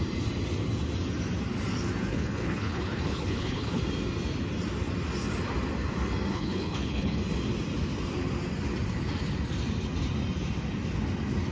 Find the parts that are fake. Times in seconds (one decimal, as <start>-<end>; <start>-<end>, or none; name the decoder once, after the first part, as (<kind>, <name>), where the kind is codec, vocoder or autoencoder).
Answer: 2.1-3.8 (codec, HILCodec); 6.3-7.2